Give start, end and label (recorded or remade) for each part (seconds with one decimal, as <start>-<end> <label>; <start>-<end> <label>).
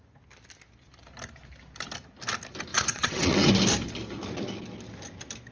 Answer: 0.0-2.7 recorded; 2.7-3.5 remade; 3.5-5.5 recorded